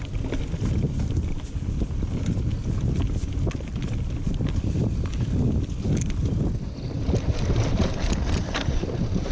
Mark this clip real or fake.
real